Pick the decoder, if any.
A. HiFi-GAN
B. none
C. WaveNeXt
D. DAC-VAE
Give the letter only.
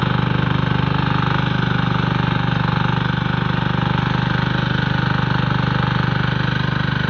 B